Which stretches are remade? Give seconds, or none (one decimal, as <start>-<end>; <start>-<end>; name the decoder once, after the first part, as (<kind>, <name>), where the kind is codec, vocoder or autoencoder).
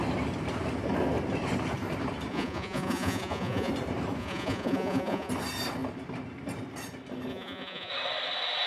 2.3-3.7 (vocoder, Vocos); 4.2-5.3; 7.3-7.9